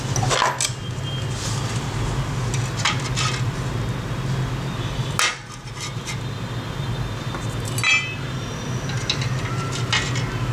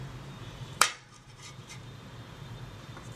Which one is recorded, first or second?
first